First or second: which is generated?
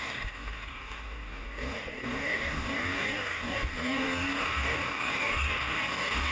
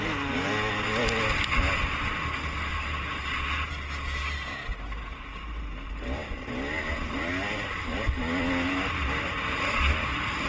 first